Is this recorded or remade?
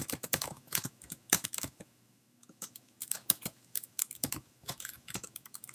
remade